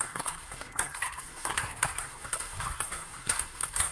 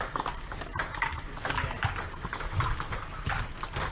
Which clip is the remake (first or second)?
first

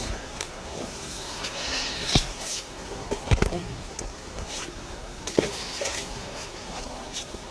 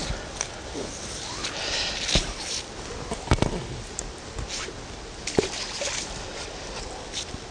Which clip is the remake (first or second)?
first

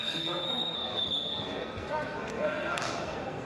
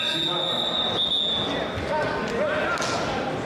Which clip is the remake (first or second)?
first